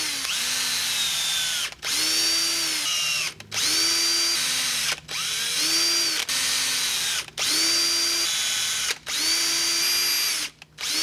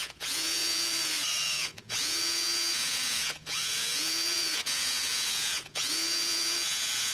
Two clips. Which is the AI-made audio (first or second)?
second